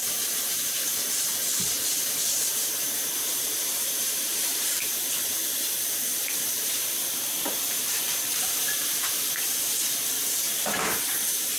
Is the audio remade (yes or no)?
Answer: yes